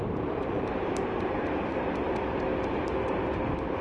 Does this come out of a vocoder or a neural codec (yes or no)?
no